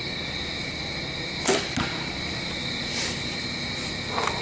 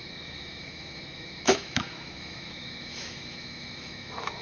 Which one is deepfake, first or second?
second